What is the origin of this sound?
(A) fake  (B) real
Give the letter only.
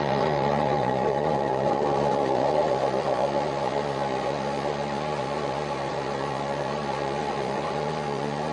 A